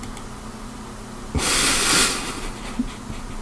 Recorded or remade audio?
recorded